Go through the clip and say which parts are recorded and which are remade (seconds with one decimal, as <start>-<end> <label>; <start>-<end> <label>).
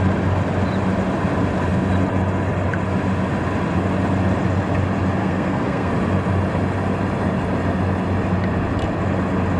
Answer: 0.0-5.2 recorded; 5.2-5.9 remade; 5.9-9.6 recorded